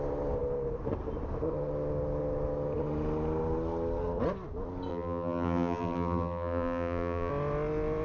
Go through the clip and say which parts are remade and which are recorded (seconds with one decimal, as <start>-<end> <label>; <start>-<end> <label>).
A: 0.0-4.9 recorded; 4.9-7.3 remade; 7.3-8.0 recorded

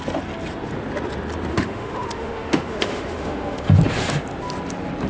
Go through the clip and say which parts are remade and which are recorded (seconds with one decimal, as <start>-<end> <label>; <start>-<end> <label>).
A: 0.0-1.5 recorded; 1.5-3.8 remade; 3.8-5.1 recorded

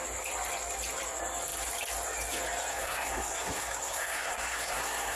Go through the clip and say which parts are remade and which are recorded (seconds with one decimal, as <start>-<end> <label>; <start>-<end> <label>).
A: 0.0-2.7 recorded; 2.7-5.2 remade

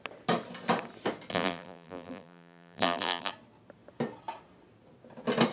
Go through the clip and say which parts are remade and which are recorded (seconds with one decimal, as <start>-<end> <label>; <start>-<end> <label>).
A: 0.0-1.3 recorded; 1.3-3.3 remade; 3.3-5.5 recorded

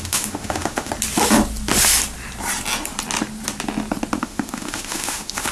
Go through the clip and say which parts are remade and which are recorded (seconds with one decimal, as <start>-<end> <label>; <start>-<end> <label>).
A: 0.0-0.9 remade; 0.9-4.2 recorded; 4.2-5.5 remade

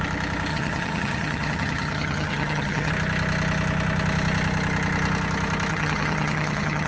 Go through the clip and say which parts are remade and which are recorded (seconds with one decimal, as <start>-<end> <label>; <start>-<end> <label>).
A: 0.0-0.5 recorded; 0.5-2.9 remade; 2.9-5.7 recorded; 5.7-6.9 remade

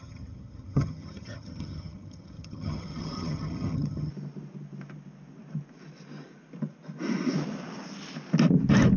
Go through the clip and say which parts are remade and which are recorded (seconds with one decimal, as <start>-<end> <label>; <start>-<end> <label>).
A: 0.0-4.1 remade; 4.1-9.0 recorded

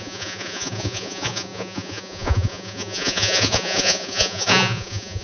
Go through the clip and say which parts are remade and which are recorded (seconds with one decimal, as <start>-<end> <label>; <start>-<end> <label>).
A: 0.0-5.2 remade